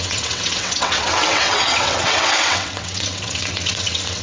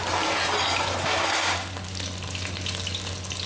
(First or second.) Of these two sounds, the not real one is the first